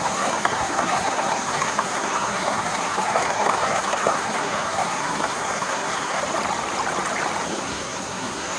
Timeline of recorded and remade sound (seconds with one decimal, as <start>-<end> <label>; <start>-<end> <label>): 0.0-6.2 remade; 6.2-7.5 recorded; 7.5-8.6 remade